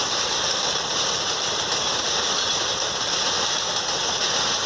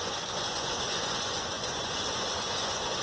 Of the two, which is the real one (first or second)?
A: first